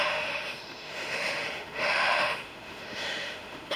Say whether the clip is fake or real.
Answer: fake